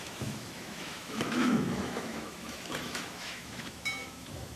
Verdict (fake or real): fake